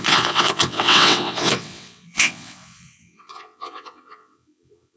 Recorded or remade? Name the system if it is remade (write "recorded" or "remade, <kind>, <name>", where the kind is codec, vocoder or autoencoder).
remade, vocoder, WaveNeXt